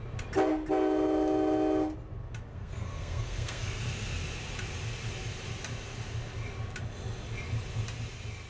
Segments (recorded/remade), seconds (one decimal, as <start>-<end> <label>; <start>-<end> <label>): 0.0-2.5 recorded; 2.5-3.8 remade; 3.8-8.5 recorded